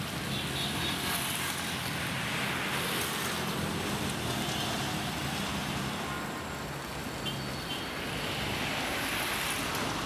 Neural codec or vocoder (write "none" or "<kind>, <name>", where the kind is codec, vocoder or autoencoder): none